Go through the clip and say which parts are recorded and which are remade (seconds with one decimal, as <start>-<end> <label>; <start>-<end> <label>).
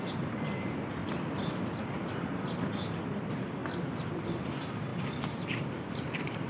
0.0-1.0 remade; 1.0-3.2 recorded; 3.2-3.6 remade; 3.6-4.5 recorded; 4.5-4.9 remade; 4.9-5.6 recorded; 5.6-6.5 remade